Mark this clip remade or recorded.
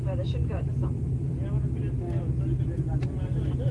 recorded